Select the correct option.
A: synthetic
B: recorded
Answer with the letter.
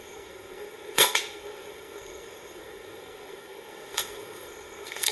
A